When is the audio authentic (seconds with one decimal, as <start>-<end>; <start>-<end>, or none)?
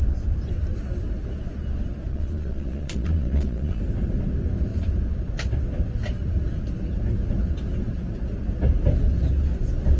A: 0.0-2.1; 3.8-10.0